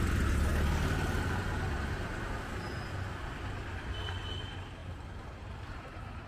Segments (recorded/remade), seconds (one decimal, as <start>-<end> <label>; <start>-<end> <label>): 0.0-6.3 recorded